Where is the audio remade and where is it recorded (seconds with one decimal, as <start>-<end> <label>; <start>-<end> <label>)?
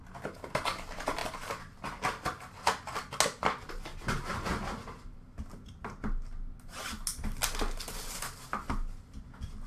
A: 0.0-9.7 recorded